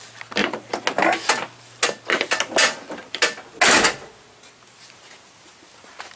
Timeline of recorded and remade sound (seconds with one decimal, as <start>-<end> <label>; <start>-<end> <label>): 0.0-6.2 recorded

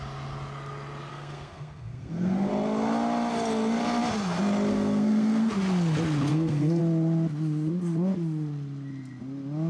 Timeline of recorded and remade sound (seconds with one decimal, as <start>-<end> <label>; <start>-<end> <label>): 0.0-1.1 recorded; 1.1-2.5 remade; 2.5-4.7 recorded; 4.7-5.5 remade; 5.5-6.3 recorded; 6.3-6.8 remade; 6.8-9.7 recorded